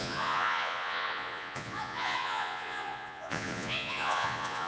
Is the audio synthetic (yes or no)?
yes